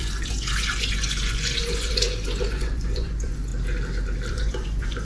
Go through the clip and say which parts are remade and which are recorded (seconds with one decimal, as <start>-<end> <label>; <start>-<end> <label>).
0.0-3.5 remade; 3.5-4.3 recorded; 4.3-5.0 remade